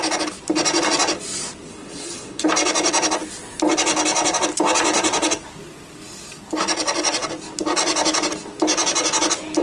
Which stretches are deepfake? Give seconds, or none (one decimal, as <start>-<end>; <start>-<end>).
1.7-2.5